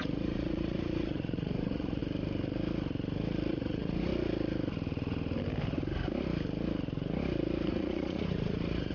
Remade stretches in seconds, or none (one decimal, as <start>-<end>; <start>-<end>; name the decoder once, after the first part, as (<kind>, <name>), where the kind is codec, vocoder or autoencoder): 0.0-2.0 (vocoder, Vocos); 3.5-4.1; 7.7-8.9